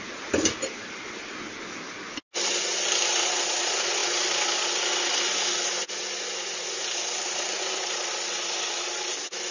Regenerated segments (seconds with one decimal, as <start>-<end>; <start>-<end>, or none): none